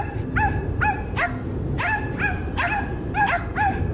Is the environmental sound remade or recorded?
recorded